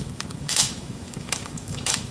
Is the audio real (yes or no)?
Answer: no